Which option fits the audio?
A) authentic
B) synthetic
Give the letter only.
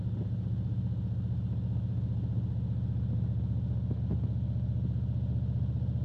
A